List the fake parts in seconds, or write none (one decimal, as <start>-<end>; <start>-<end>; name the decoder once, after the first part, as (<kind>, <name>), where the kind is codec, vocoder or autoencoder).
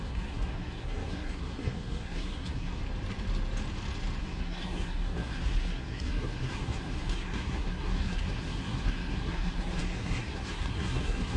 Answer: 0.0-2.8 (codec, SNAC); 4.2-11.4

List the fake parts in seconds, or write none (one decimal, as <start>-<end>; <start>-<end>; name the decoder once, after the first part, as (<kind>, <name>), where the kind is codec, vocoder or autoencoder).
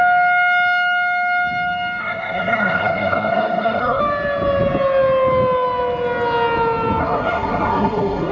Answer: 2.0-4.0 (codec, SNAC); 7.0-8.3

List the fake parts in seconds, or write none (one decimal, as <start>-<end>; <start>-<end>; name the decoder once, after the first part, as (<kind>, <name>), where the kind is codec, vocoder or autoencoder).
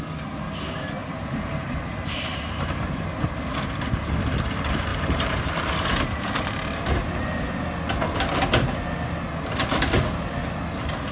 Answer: 1.0-3.0 (vocoder, BigVGAN v2); 4.9-7.2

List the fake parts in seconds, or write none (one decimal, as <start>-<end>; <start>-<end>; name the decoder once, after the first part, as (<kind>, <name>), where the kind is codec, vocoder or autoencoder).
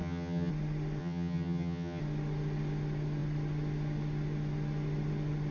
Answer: 0.0-0.5 (vocoder, HiFi-GAN); 1.0-2.0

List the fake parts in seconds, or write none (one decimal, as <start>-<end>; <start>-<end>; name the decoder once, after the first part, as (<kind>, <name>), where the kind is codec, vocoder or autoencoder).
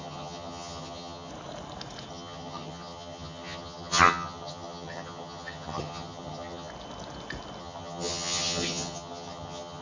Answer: 0.0-1.3 (vocoder, HiFi-GAN); 2.1-6.7; 7.6-9.8